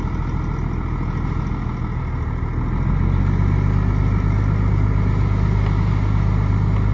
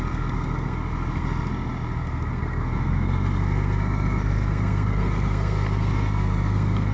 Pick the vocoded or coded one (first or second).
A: second